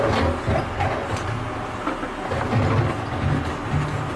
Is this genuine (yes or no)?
yes